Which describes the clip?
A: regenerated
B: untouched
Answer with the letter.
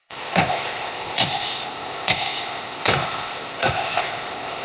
A